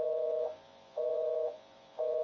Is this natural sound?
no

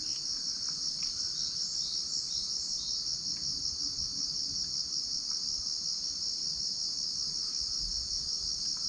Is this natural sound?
yes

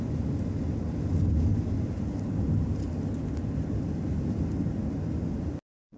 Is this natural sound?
yes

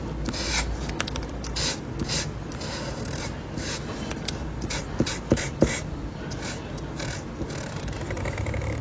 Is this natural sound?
yes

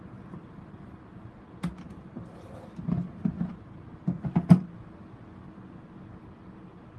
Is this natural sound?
yes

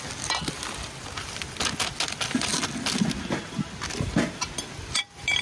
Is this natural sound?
yes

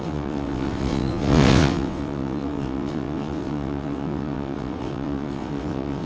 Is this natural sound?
no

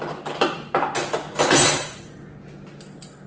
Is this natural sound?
yes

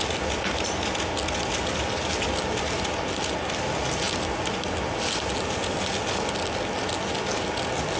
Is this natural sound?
yes